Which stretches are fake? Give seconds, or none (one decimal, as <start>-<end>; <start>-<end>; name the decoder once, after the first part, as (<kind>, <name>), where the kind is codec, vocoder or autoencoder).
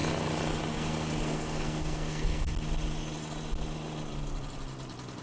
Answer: 0.7-2.5 (codec, SNAC)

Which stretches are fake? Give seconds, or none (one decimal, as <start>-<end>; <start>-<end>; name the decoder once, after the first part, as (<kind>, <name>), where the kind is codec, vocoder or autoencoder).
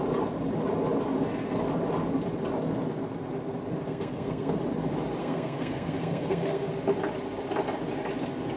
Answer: 3.9-4.6 (codec, SNAC); 5.2-6.7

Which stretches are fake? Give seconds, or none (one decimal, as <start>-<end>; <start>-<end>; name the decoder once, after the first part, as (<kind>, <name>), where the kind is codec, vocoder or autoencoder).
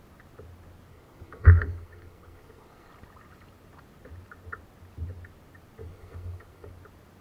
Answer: 0.9-2.9 (codec, SNAC); 5.8-6.7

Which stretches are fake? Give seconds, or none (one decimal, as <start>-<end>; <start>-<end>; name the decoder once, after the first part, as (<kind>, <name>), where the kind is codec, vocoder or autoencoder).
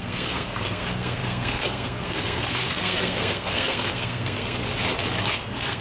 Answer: 0.0-4.7 (codec, SNAC); 5.2-5.8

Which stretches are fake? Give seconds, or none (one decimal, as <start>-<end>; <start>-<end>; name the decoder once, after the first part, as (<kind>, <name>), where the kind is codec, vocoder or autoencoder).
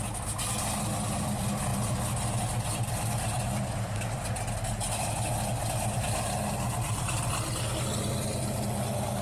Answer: none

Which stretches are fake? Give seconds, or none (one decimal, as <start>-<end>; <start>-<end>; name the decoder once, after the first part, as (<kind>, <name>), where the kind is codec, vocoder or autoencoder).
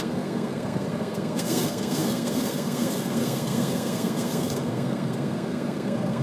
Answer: 0.0-6.2 (codec, SNAC)